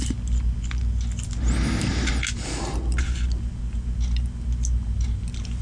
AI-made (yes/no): no